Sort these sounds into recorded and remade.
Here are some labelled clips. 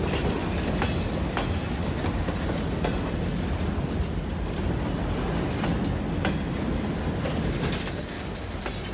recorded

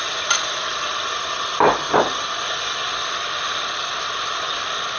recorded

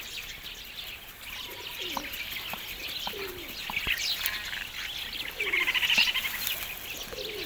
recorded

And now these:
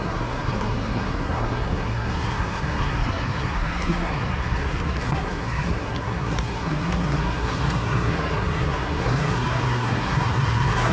remade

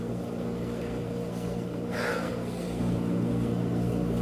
remade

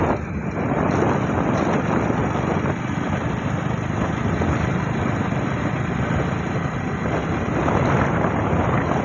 recorded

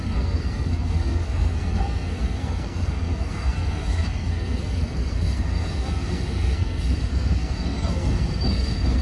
remade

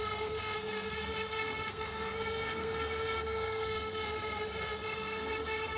remade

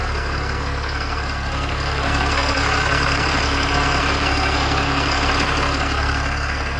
remade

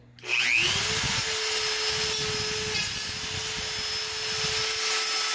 recorded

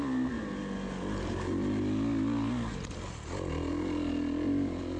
recorded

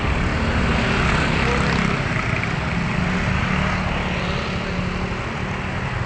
recorded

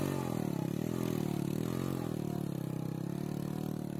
recorded